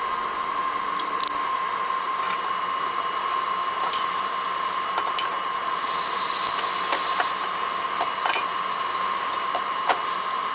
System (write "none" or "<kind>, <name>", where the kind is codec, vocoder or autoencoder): none